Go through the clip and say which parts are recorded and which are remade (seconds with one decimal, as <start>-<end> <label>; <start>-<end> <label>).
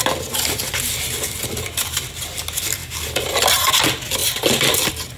0.0-5.2 recorded